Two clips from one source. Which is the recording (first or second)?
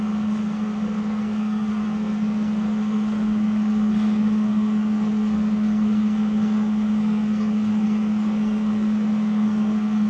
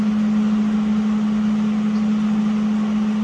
second